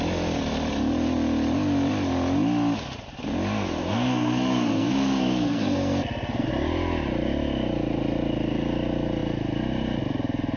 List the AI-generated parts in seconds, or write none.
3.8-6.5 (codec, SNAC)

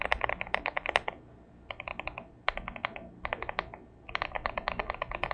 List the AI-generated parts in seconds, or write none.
none

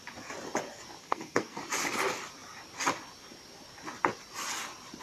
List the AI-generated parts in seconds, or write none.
1.0-1.6 (codec, SNAC)

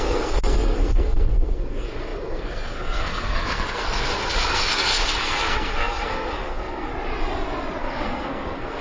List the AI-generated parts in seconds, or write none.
0.0-6.9 (codec, SNAC); 7.8-8.8